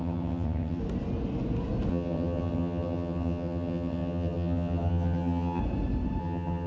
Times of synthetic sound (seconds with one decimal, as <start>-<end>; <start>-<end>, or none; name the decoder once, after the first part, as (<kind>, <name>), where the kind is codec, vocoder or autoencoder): 0.0-0.8 (vocoder, HiFi-GAN); 1.9-5.6; 6.2-6.7